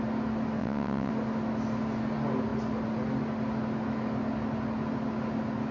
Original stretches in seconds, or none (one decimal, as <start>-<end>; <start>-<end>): 0.0-0.6; 1.1-5.7